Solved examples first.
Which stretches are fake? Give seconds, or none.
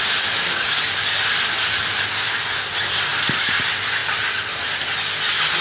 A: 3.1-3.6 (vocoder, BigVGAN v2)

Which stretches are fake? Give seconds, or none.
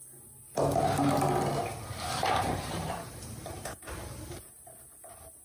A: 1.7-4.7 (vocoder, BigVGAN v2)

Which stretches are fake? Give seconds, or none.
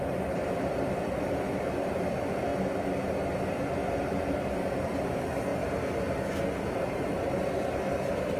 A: 0.0-2.5 (vocoder, BigVGAN v2); 4.0-5.5; 6.5-8.4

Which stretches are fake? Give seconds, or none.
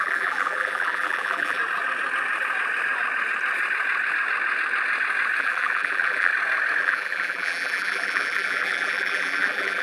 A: 0.0-1.6 (vocoder, BigVGAN v2); 5.4-6.3; 6.8-9.8